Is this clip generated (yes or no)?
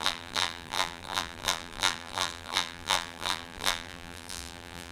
yes